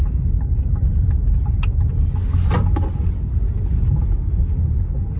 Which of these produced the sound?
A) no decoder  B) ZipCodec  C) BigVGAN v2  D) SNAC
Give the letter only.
A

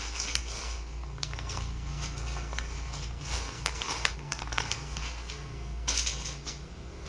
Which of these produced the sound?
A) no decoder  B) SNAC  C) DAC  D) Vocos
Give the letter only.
B